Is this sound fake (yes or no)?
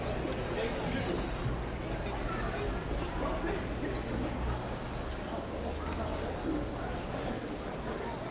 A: no